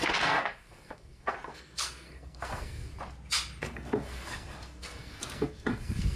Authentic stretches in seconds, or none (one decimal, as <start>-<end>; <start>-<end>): 2.9-3.6